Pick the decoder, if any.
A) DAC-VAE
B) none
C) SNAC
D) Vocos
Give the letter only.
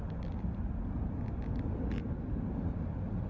B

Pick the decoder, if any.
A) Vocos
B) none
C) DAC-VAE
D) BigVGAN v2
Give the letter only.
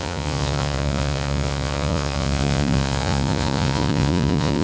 A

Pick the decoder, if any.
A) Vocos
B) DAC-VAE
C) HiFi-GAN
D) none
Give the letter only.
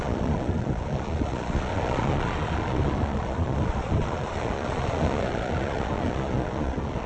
A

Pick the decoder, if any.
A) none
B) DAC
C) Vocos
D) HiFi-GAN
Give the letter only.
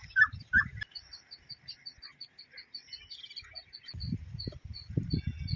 A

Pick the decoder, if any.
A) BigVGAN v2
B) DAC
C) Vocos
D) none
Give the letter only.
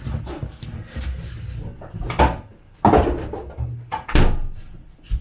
D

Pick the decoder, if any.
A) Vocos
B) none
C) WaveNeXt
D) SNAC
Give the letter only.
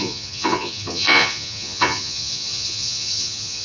A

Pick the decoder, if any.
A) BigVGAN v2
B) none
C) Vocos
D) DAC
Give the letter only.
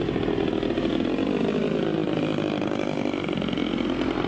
B